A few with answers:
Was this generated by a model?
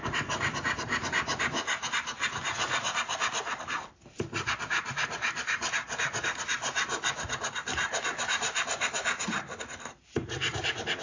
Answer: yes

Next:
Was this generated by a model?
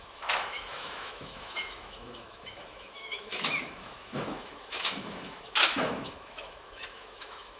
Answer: yes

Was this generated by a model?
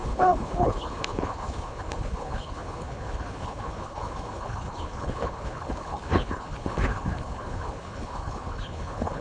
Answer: yes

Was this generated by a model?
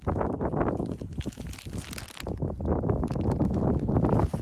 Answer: no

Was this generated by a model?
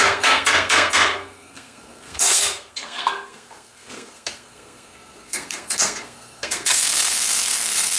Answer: yes